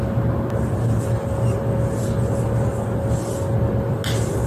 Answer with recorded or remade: recorded